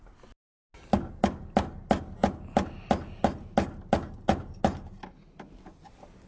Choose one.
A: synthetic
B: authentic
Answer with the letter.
B